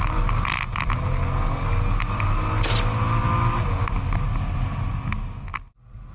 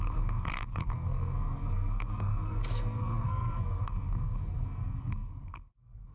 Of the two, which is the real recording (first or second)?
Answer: first